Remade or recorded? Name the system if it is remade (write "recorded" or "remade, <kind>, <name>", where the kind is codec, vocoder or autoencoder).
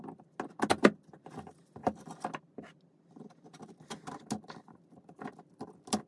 recorded